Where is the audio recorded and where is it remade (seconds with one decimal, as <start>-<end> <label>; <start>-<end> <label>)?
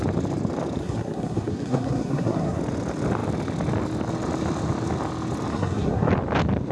0.0-0.8 recorded; 0.8-2.6 remade; 2.6-5.5 recorded; 5.5-6.1 remade; 6.1-6.7 recorded